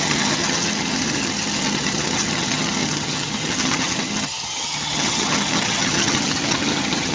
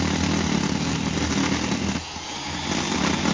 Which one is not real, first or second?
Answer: first